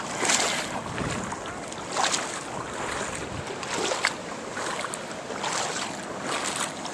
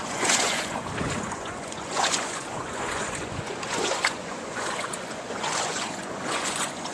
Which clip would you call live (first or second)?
first